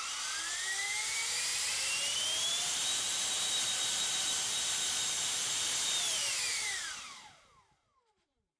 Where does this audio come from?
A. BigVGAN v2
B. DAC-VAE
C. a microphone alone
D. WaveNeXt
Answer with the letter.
A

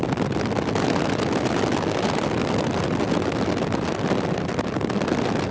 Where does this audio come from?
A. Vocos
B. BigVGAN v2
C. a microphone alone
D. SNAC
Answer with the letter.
C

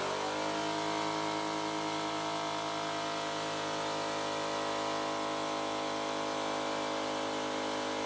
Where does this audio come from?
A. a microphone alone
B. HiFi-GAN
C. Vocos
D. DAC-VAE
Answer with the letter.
A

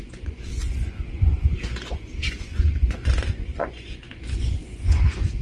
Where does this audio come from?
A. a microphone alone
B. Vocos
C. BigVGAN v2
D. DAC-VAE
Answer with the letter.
B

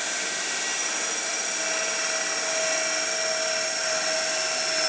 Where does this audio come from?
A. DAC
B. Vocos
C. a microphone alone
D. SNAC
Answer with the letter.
C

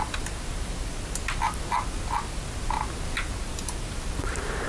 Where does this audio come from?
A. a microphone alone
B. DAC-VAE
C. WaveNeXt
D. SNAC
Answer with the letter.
A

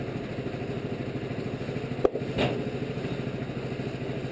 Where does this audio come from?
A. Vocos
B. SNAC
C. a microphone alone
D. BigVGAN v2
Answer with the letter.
C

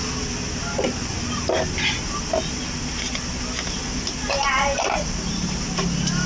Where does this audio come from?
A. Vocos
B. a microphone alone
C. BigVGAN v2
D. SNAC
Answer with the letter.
B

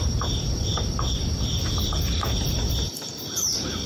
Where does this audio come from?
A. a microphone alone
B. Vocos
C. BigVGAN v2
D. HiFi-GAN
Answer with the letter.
C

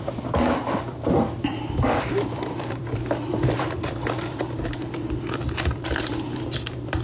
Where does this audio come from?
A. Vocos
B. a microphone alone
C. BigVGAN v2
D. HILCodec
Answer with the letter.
C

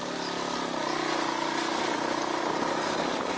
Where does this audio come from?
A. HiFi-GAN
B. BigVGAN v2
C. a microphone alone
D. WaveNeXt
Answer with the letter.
C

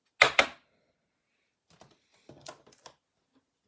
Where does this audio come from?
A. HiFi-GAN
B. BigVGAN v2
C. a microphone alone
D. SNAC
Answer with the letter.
C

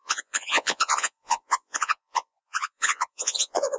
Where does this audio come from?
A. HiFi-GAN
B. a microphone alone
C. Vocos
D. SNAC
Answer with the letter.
C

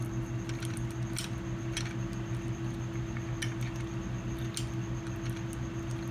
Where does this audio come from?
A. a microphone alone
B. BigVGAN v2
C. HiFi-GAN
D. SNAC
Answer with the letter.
A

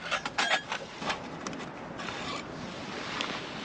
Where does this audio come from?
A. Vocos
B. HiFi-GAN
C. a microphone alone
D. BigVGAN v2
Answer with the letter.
C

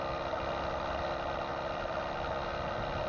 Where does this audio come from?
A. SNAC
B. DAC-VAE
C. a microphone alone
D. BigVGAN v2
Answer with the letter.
C